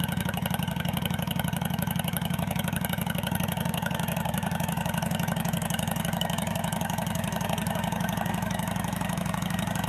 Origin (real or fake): fake